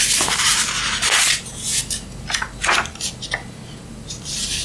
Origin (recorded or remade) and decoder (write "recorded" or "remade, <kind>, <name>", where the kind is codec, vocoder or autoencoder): recorded